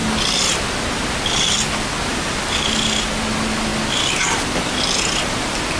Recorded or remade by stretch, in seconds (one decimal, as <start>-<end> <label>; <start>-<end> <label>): 0.0-2.1 recorded; 2.1-3.1 remade; 3.1-5.8 recorded